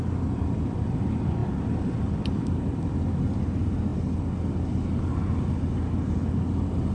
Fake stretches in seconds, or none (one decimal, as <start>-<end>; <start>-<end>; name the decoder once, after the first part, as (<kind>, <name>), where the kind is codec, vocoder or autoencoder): 1.4-2.9 (vocoder, BigVGAN v2)